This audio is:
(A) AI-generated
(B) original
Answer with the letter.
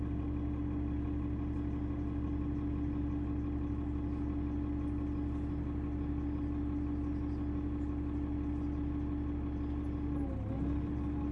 B